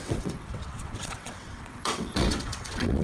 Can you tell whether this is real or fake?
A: fake